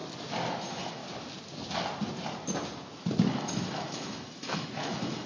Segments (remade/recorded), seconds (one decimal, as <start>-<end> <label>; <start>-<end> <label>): 0.0-0.6 recorded; 0.6-1.0 remade; 1.0-3.3 recorded; 3.3-5.3 remade